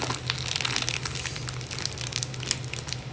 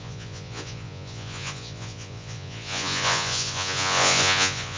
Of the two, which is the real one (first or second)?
first